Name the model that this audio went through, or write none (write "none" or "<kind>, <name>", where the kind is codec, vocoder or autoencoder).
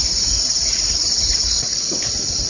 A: none